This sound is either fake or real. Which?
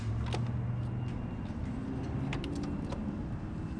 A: real